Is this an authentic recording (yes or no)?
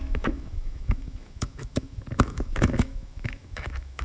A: no